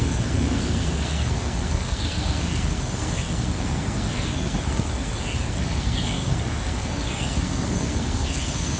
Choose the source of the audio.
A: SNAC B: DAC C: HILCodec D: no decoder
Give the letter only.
A